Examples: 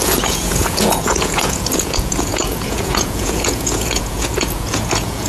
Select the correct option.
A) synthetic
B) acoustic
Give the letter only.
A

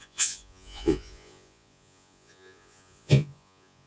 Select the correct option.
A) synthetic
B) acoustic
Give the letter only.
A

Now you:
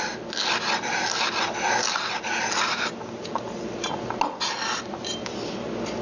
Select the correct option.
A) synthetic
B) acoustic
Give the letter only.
B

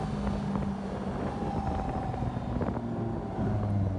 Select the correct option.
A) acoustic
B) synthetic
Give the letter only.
A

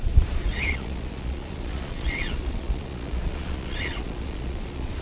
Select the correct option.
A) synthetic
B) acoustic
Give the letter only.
A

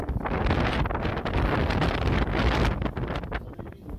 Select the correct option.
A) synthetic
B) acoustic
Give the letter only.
B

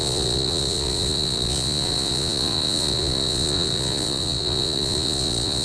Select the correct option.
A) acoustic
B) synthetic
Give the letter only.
B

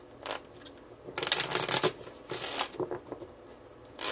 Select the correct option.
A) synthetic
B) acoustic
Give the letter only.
B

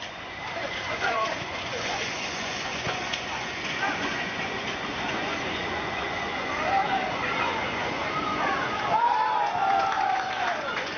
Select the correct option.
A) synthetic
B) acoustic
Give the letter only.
A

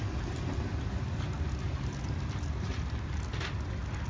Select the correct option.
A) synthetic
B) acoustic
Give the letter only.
B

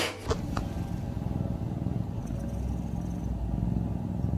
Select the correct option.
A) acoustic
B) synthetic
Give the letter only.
A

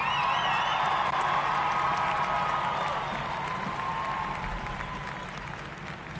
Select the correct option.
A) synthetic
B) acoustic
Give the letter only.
B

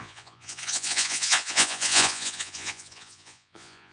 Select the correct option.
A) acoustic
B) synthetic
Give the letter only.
B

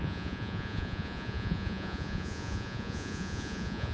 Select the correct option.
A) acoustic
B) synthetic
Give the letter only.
B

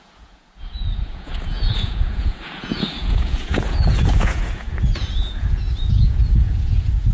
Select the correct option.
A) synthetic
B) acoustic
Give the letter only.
A